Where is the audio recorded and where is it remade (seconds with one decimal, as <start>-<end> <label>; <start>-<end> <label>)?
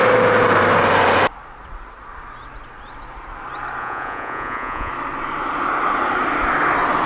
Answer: 0.0-3.8 recorded; 3.8-4.9 remade; 4.9-7.1 recorded